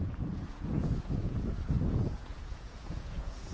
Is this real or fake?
fake